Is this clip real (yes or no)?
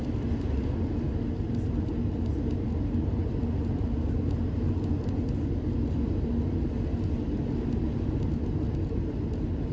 yes